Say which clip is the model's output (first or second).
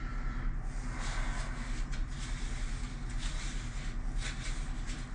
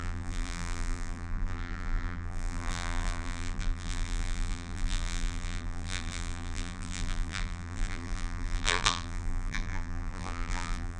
second